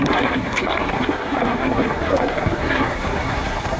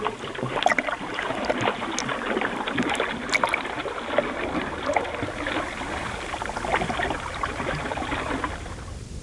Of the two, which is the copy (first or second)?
first